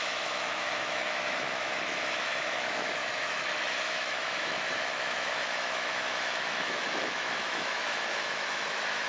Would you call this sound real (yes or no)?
no